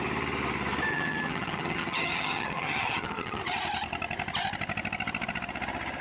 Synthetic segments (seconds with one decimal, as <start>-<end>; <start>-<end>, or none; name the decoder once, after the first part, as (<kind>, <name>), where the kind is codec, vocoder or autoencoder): 0.9-3.4 (vocoder, HiFi-GAN)